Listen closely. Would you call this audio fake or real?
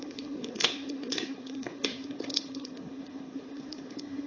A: fake